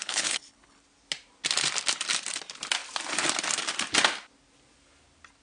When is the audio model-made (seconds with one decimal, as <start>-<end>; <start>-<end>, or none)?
0.0-0.8